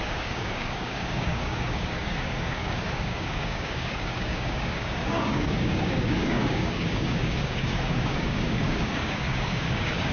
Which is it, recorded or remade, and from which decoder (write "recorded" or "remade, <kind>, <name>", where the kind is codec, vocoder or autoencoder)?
remade, codec, DAC